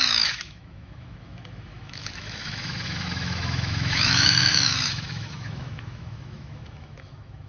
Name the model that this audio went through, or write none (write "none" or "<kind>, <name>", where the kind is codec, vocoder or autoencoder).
autoencoder, DAC-VAE